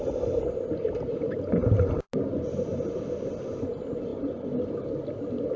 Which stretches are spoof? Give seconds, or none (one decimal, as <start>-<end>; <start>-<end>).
none